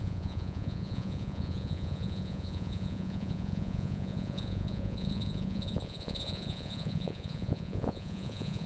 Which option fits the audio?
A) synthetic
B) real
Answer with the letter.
A